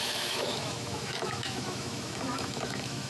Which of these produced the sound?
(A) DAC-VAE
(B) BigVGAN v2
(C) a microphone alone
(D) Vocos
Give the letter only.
A